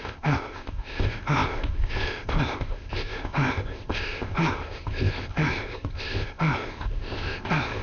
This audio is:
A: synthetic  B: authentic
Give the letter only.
A